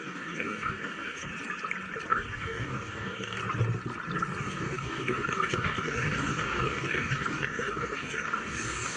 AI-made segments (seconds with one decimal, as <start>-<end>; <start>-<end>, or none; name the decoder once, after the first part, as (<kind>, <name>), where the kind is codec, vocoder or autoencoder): 0.0-1.3 (codec, DAC); 2.1-3.4; 4.4-9.0